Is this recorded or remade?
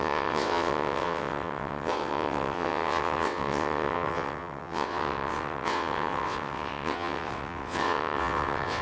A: remade